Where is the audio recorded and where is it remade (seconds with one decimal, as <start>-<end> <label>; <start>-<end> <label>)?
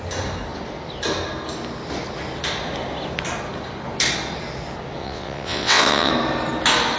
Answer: 0.0-5.0 recorded; 5.0-6.1 remade; 6.1-7.0 recorded